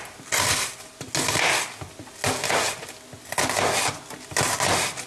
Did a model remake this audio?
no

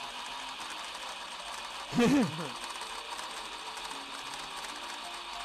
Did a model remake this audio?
no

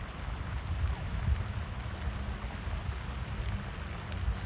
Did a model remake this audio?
no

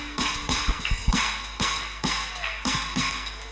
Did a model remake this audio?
yes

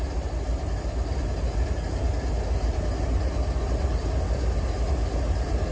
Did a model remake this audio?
no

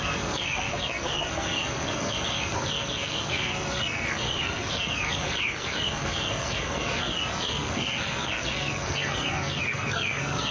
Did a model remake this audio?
yes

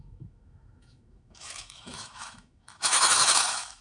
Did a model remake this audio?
yes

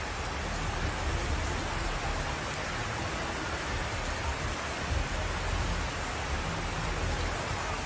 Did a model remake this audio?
no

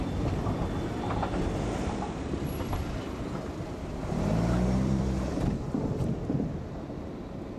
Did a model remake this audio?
yes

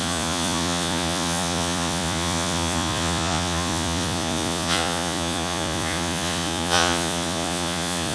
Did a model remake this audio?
yes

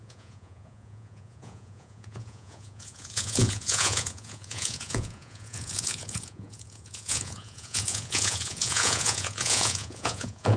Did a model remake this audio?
yes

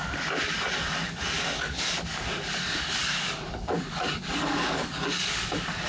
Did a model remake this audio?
yes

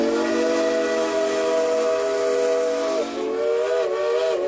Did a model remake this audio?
no